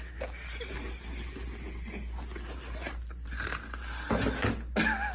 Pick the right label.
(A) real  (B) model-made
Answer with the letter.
A